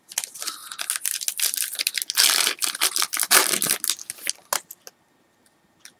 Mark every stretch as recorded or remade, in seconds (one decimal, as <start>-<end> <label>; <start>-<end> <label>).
0.0-6.0 recorded